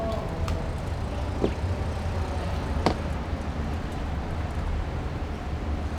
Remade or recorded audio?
recorded